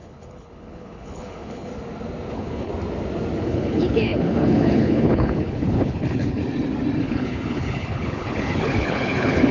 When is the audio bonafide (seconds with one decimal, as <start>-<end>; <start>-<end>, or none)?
1.7-2.3; 2.7-3.4; 6.4-7.0